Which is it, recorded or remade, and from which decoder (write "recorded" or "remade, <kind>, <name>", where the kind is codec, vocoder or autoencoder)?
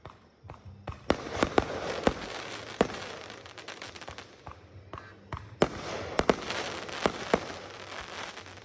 recorded